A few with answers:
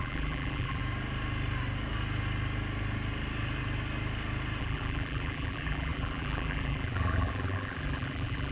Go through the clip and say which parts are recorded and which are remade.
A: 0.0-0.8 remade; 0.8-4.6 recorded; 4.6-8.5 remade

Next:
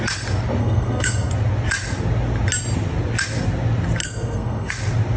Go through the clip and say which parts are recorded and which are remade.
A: 0.0-0.6 recorded; 0.6-1.3 remade; 1.3-4.0 recorded; 4.0-4.7 remade; 4.7-5.2 recorded

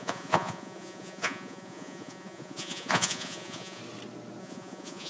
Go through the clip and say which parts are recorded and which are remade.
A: 0.0-3.8 remade; 3.8-4.4 recorded; 4.4-5.1 remade

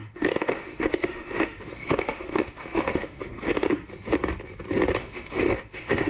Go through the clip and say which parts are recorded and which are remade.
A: 0.0-3.7 remade; 3.7-5.0 recorded; 5.0-6.1 remade

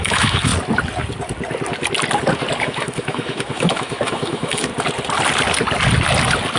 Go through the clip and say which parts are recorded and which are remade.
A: 0.0-0.5 remade; 0.5-2.6 recorded; 2.6-4.7 remade; 4.7-6.6 recorded